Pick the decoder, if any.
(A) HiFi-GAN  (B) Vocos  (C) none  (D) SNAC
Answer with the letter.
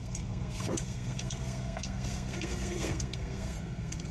D